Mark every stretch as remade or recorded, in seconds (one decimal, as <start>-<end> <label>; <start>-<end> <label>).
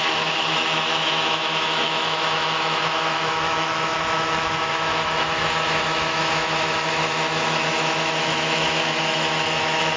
0.0-10.0 remade